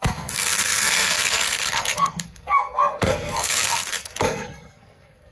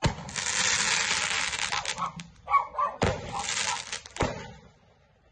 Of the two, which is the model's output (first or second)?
first